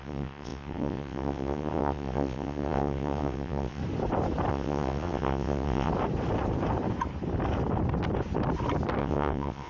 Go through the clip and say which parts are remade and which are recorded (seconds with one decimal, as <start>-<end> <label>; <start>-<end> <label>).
0.0-3.8 remade; 3.8-4.5 recorded; 4.5-5.9 remade; 5.9-9.0 recorded; 9.0-9.7 remade